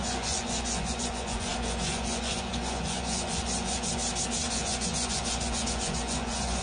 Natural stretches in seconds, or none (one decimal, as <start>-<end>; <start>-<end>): 4.0-4.5